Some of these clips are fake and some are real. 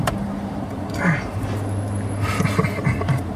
fake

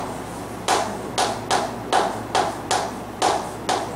real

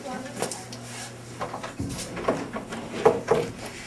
real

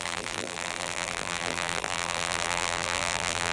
fake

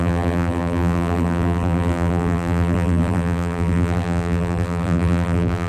fake